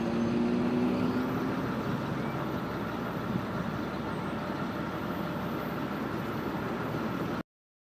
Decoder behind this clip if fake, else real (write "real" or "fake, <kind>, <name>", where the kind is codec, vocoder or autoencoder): real